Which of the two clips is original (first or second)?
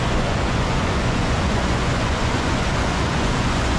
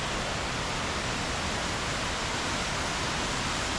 second